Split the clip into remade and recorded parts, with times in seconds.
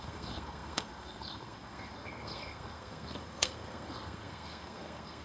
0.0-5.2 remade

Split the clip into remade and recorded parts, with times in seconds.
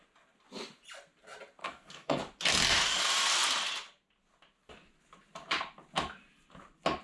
0.0-1.6 recorded; 1.6-2.2 remade; 2.2-7.0 recorded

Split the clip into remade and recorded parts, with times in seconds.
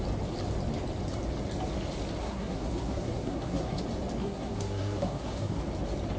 0.0-2.2 recorded; 2.2-3.8 remade; 3.8-4.2 recorded; 4.2-5.6 remade; 5.6-6.2 recorded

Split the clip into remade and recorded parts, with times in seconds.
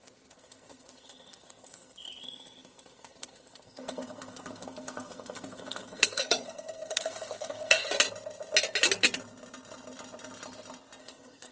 0.0-7.8 remade; 7.8-11.0 recorded; 11.0-11.5 remade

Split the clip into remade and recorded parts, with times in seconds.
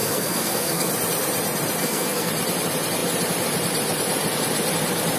0.0-0.9 remade; 0.9-1.8 recorded; 1.8-2.3 remade; 2.3-5.2 recorded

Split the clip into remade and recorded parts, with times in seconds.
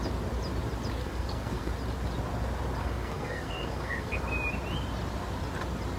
0.0-1.0 recorded; 1.0-1.7 remade; 1.7-2.8 recorded; 2.8-4.2 remade; 4.2-6.0 recorded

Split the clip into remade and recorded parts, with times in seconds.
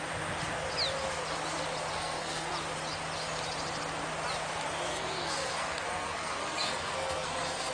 0.0-1.9 recorded; 1.9-2.5 remade; 2.5-4.9 recorded; 4.9-7.7 remade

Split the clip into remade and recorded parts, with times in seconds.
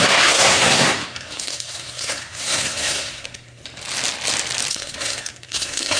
0.0-3.6 remade; 3.6-4.7 recorded; 4.7-6.0 remade